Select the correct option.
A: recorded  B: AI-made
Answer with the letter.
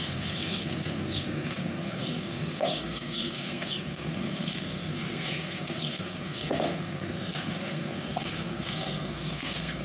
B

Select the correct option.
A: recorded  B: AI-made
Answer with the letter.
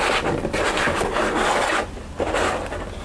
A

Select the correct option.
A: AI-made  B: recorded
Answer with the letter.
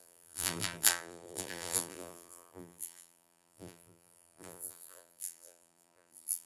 A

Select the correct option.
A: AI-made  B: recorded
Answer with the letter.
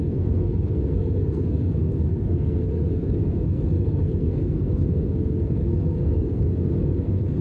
A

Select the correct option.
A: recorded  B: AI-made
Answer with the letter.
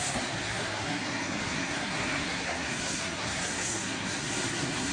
B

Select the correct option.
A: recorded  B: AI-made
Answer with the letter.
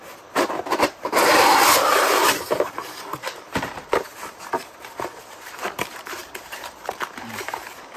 B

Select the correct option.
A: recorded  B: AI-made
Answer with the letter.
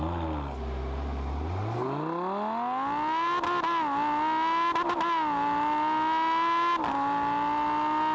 A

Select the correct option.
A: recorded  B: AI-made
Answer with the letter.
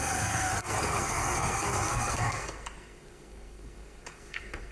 B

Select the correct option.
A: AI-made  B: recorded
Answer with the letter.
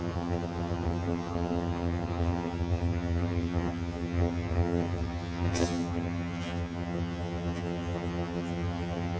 A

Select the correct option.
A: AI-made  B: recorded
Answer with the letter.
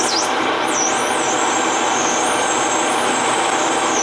B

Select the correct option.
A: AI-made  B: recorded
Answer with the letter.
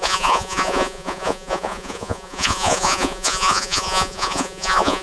A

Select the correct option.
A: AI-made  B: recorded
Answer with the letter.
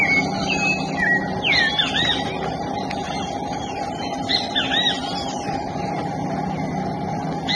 B